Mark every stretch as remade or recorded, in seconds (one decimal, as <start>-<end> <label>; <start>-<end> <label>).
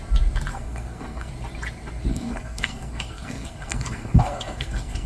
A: 0.0-0.5 recorded; 0.5-1.3 remade; 1.3-2.1 recorded; 2.1-5.1 remade